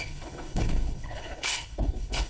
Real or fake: fake